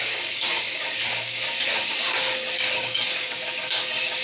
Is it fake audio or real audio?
fake